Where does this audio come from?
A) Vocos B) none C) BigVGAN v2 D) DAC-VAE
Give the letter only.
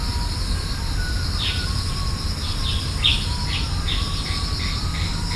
B